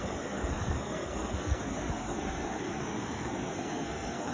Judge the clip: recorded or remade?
remade